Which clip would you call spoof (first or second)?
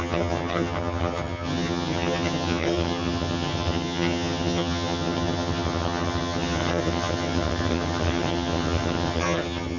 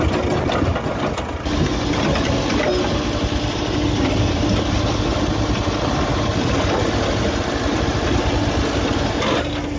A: first